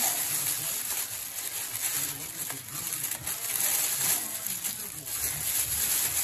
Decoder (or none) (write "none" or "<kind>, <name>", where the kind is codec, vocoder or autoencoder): none